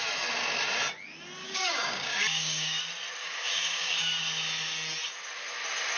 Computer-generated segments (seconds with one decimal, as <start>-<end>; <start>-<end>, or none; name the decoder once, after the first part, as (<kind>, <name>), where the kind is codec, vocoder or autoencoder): 1.4-2.8 (codec, DAC); 3.2-4.2